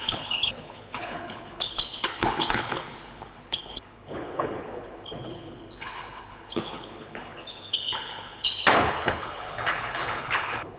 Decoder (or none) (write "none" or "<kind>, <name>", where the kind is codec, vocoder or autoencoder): codec, HILCodec